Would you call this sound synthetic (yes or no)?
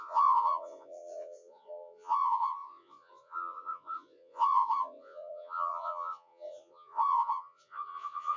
yes